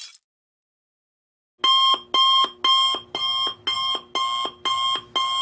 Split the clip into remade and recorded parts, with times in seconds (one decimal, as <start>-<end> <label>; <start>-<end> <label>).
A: 0.0-5.4 recorded